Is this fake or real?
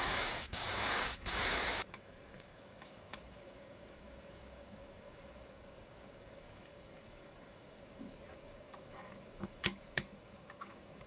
fake